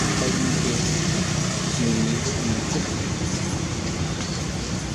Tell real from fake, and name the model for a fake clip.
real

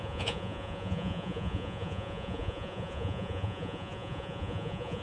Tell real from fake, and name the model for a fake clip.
fake, vocoder, Vocos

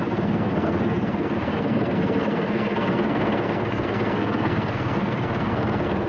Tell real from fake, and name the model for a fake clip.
fake, codec, SNAC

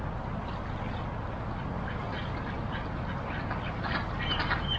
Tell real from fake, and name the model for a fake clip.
real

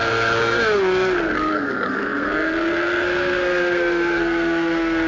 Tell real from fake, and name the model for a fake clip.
fake, codec, SNAC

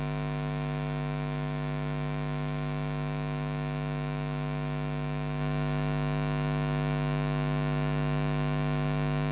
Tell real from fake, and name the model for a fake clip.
fake, autoencoder, DAC-VAE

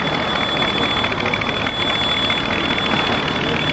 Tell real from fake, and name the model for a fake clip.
real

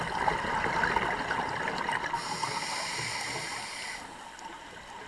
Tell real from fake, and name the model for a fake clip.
real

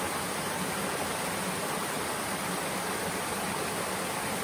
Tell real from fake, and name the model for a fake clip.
real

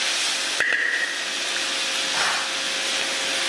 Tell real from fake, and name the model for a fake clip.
real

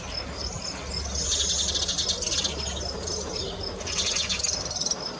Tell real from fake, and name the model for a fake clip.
real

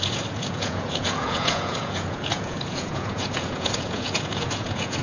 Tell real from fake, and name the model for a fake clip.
fake, vocoder, Vocos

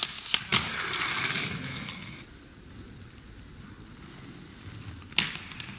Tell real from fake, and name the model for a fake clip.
real